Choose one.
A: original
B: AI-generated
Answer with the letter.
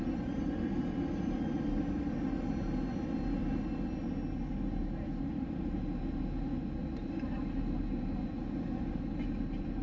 A